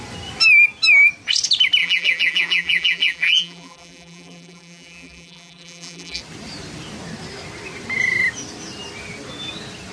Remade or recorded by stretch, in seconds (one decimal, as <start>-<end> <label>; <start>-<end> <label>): 0.0-1.8 recorded; 1.8-6.2 remade; 6.2-9.9 recorded